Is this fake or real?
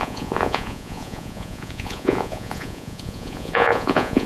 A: fake